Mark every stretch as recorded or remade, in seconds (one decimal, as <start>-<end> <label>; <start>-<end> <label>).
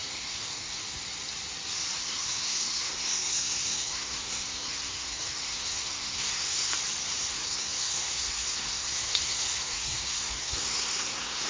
0.0-0.8 remade; 0.8-2.0 recorded; 2.0-6.7 remade; 6.7-7.3 recorded; 7.3-11.5 remade